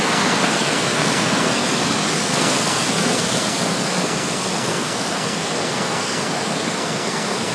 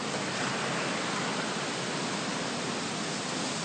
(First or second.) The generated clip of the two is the first